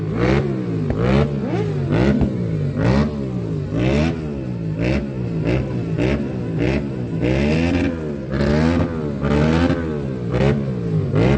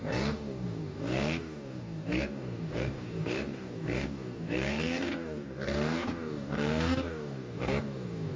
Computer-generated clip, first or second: second